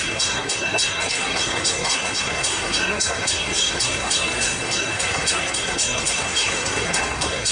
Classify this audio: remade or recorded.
remade